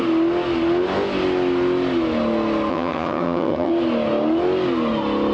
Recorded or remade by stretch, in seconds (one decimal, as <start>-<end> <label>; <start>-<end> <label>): 0.0-2.7 recorded; 2.7-3.7 remade; 3.7-5.3 recorded